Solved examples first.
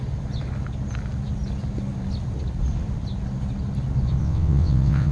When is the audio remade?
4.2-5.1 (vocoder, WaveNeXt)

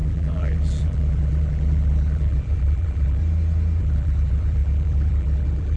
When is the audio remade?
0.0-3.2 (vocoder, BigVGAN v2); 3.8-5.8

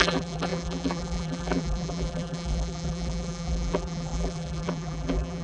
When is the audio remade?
0.0-5.4 (vocoder, BigVGAN v2)

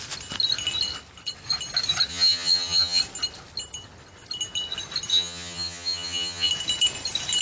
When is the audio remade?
2.1-3.0 (vocoder, HiFi-GAN); 5.1-6.5